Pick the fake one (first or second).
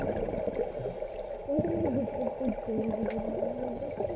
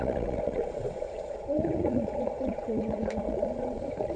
second